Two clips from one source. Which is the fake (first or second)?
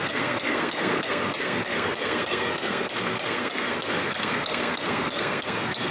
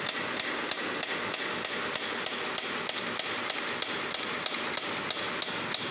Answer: first